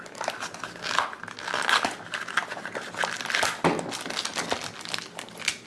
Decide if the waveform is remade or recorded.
recorded